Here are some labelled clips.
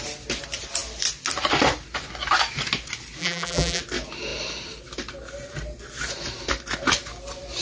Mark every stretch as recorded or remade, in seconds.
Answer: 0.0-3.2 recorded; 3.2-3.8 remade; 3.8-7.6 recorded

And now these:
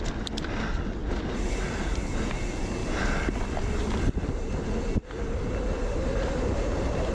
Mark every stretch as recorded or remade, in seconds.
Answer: 0.0-1.0 recorded; 1.0-2.3 remade; 2.3-2.8 recorded; 2.8-3.8 remade; 3.8-7.1 recorded

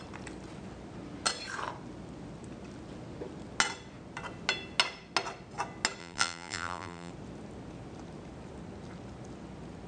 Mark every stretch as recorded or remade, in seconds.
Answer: 0.0-6.0 recorded; 6.0-7.1 remade; 7.1-9.9 recorded

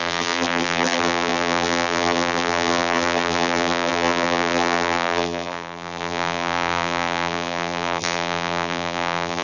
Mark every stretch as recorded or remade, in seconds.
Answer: 0.0-9.4 remade

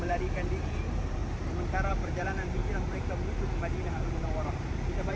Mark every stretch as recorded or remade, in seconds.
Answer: 0.0-1.2 remade; 1.2-1.9 recorded; 1.9-2.6 remade; 2.6-4.1 recorded; 4.1-5.2 remade

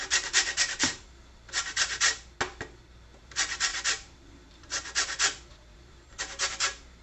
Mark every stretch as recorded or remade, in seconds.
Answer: 0.0-2.1 remade; 2.1-3.2 recorded; 3.2-7.0 remade